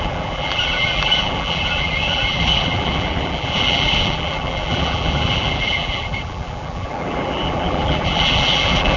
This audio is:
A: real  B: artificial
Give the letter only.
B